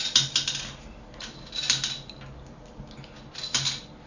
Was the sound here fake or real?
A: real